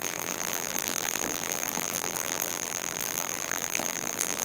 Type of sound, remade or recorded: remade